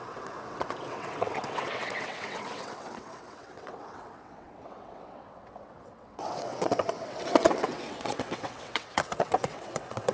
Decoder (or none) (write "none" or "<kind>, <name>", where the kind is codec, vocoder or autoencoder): vocoder, WaveNeXt